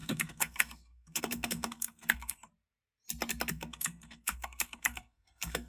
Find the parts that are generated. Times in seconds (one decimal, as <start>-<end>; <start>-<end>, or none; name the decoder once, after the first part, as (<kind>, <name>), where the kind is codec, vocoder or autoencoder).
0.0-2.5 (codec, SNAC); 3.5-5.7